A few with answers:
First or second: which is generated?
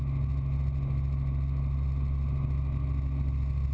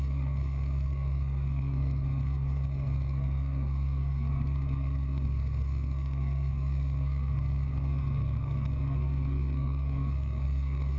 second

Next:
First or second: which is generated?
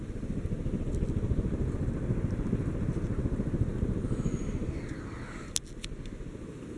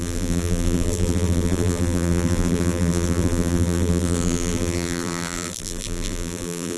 second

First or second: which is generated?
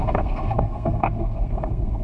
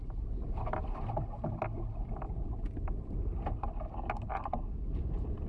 first